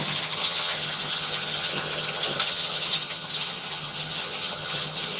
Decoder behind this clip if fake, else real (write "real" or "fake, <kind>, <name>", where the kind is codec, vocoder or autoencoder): fake, vocoder, HiFi-GAN